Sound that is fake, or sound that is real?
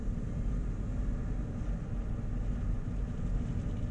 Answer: real